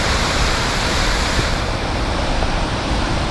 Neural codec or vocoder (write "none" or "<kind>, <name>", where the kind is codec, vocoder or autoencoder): vocoder, BigVGAN v2